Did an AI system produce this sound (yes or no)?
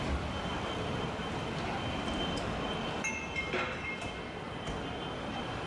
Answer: no